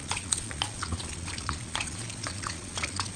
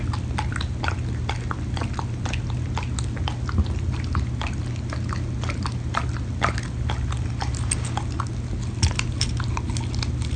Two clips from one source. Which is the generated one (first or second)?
first